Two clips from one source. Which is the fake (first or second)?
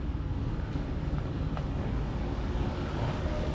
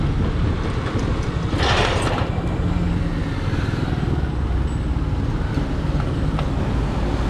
first